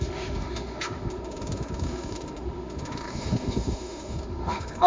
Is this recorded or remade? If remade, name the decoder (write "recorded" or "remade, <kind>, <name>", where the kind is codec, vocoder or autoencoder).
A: remade, autoencoder, DAC-VAE